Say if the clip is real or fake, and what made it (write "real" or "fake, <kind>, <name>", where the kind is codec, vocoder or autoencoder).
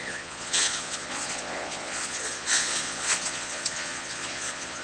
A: fake, vocoder, Vocos